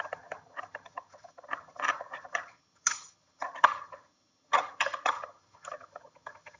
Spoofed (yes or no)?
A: yes